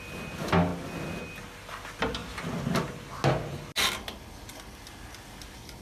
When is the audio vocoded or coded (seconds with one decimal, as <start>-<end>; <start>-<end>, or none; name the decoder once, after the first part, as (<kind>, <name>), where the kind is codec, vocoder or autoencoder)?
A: none